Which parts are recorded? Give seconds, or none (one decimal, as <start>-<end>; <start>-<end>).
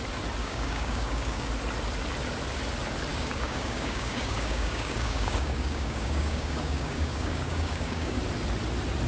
0.0-0.4; 1.5-3.1; 8.2-9.1